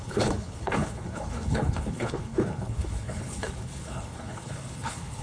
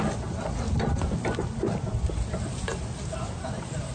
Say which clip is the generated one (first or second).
first